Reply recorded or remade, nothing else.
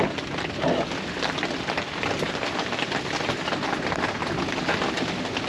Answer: recorded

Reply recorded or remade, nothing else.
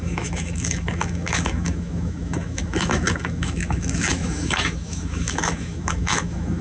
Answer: remade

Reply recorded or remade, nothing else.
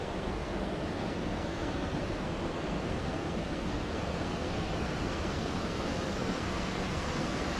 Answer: remade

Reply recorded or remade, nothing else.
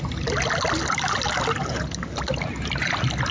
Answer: recorded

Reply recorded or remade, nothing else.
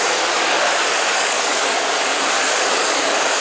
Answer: remade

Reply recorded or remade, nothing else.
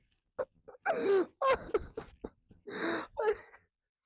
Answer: recorded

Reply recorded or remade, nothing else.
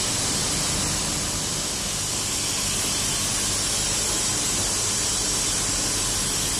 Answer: recorded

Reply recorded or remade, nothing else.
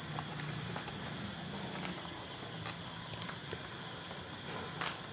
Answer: recorded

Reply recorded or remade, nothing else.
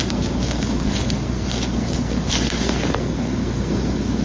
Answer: remade